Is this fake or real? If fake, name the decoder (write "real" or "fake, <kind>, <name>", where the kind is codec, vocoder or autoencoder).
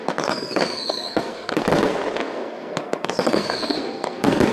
fake, codec, SNAC